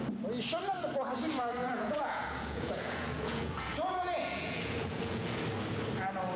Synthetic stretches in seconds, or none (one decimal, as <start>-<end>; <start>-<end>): 1.6-5.4